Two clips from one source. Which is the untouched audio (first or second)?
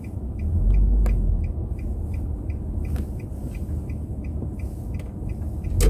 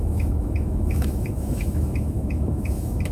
first